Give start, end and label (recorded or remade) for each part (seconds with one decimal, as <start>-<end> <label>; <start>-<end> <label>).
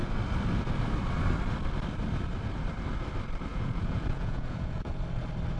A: 0.0-3.5 recorded; 3.5-5.0 remade; 5.0-5.6 recorded